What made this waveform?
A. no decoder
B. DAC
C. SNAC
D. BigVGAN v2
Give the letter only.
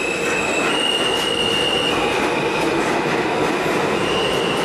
A